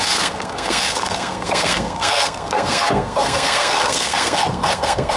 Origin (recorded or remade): remade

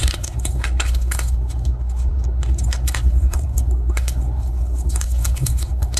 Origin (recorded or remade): remade